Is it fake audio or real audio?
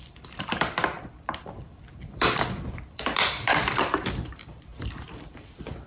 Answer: fake